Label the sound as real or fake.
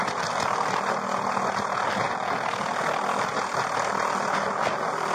real